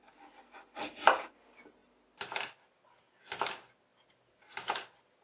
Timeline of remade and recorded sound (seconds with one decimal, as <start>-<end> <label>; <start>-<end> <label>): 0.0-5.2 recorded